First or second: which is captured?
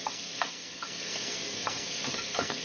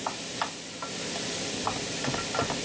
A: second